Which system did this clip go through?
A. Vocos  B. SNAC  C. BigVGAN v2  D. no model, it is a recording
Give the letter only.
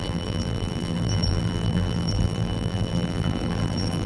C